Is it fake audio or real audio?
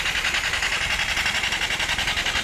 real